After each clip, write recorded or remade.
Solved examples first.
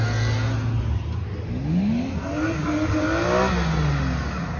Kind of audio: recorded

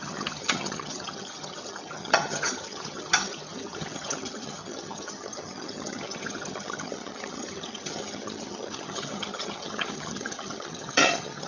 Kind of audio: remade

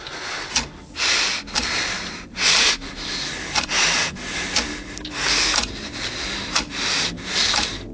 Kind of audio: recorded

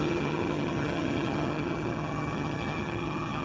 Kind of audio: remade